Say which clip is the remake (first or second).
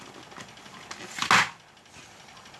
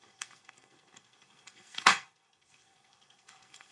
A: second